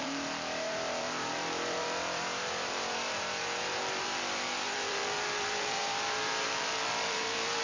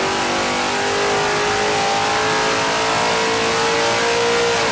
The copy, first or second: first